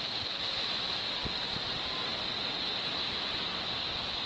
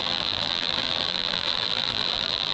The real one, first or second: first